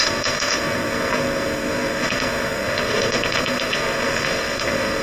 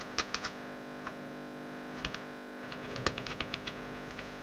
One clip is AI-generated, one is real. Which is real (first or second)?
second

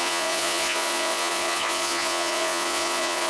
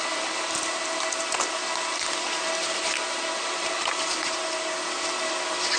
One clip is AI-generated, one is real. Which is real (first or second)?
second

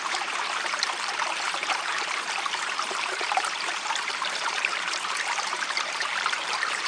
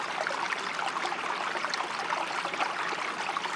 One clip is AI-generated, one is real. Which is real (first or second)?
second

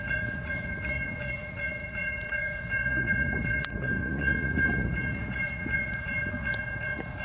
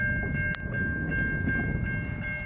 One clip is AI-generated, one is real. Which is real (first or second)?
second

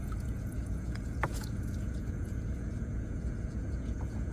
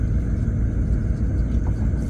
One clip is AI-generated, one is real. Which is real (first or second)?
second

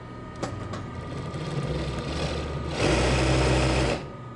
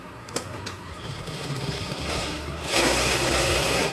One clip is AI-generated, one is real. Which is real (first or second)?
first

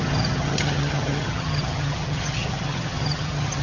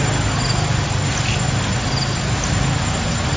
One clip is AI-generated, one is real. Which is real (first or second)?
second